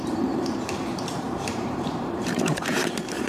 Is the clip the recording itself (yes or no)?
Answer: no